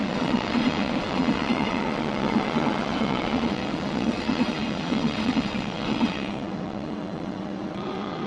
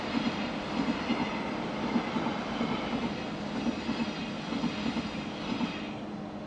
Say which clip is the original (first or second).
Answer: second